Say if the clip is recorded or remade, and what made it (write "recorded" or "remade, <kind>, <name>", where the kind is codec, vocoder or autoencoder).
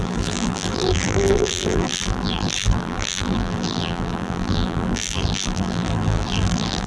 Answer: remade, vocoder, BigVGAN v2